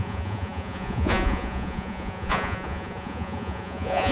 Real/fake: fake